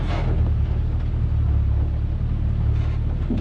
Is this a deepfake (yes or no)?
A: no